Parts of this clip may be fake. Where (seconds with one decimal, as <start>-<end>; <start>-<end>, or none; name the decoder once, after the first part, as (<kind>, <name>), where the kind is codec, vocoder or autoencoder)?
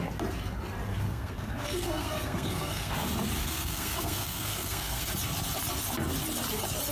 0.9-2.9 (codec, SNAC); 3.4-5.1